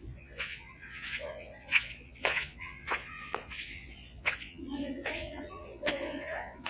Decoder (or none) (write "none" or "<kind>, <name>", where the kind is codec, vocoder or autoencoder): vocoder, Vocos